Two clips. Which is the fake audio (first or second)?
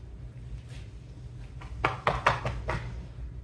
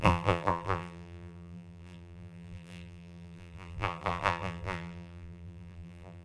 second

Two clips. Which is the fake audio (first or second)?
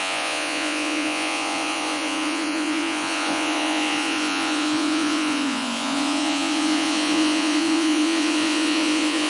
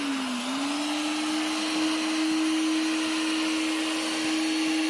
first